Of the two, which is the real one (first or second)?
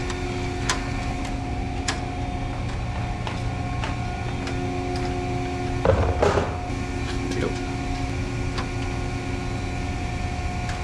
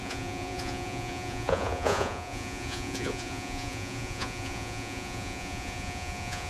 first